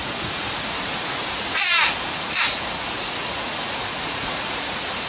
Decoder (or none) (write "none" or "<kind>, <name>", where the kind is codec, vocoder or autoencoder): vocoder, Vocos